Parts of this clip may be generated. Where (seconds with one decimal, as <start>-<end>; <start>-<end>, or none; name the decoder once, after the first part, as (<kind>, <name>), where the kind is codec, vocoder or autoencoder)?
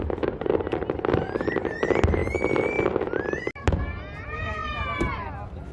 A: 4.6-5.3 (vocoder, BigVGAN v2)